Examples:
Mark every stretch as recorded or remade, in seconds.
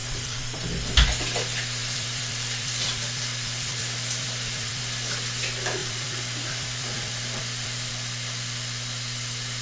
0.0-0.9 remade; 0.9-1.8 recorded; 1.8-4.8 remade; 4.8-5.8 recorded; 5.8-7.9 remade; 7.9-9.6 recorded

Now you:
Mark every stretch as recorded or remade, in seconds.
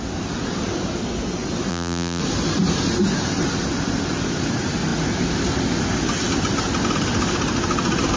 0.0-1.7 recorded; 1.7-2.2 remade; 2.2-8.2 recorded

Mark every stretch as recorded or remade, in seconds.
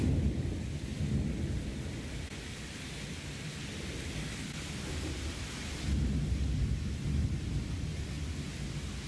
0.0-9.1 recorded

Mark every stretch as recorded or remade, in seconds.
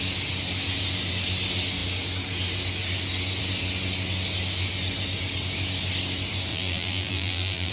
0.0-6.5 recorded; 6.5-7.7 remade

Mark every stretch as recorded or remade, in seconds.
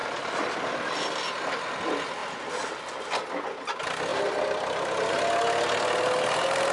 0.0-6.7 recorded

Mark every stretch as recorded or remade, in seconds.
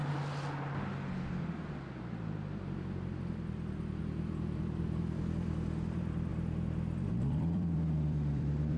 0.0-4.0 recorded; 4.0-6.3 remade; 6.3-7.1 recorded; 7.1-8.8 remade